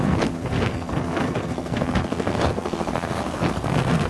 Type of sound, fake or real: fake